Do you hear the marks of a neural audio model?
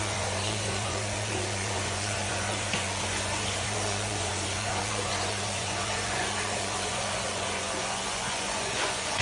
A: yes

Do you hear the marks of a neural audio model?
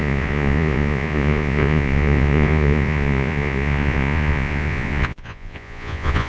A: yes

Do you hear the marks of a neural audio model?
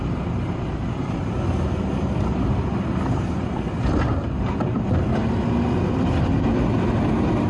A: no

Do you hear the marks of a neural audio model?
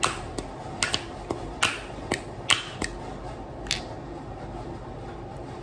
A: no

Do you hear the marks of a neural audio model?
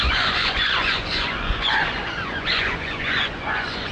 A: yes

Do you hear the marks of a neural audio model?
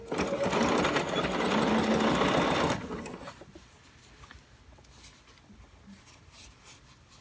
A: no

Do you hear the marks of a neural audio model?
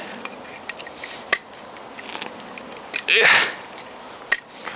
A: no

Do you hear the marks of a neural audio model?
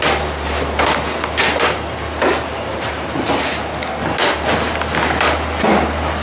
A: no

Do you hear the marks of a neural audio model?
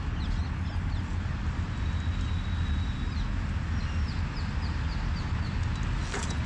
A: no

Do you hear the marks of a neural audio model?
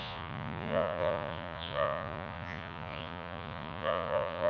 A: yes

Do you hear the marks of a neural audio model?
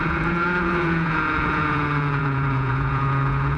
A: yes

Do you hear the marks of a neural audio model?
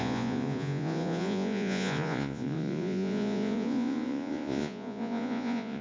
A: yes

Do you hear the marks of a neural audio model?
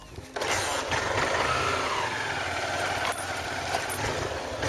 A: no